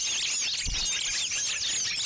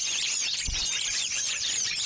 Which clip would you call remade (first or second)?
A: second